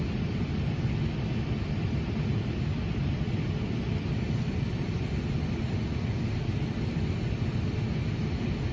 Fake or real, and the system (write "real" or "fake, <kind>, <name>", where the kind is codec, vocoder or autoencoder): real